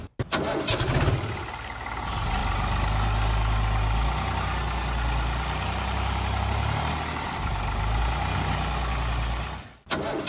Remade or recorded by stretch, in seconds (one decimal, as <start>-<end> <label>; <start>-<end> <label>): 0.0-10.3 recorded